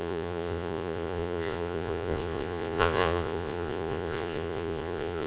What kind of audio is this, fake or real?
fake